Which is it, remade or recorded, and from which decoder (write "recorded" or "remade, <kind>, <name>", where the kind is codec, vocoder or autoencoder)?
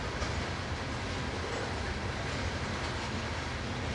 recorded